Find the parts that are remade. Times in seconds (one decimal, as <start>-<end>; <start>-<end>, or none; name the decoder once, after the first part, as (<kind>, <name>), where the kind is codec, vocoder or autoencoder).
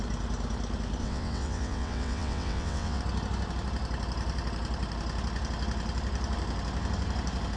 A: 1.0-3.0 (vocoder, WaveNeXt)